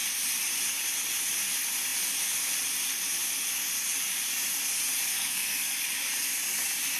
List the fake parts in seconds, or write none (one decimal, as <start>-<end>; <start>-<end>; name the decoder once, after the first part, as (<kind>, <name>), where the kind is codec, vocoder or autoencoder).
5.1-5.8 (codec, SNAC)